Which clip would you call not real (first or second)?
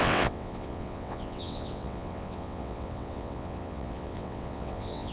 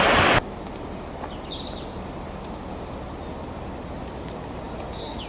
first